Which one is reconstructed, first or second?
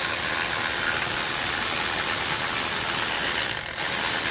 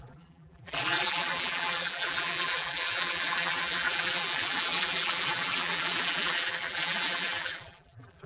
second